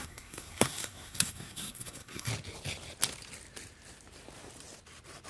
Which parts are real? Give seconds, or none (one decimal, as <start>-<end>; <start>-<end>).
2.3-5.3